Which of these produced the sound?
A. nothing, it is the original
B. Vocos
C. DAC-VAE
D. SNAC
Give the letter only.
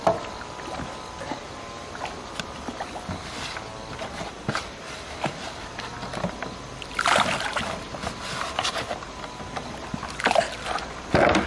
A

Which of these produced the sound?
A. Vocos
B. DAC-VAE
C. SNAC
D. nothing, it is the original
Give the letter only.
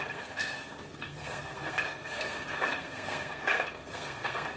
C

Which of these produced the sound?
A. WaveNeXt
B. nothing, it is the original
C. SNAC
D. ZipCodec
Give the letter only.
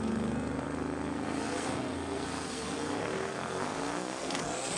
C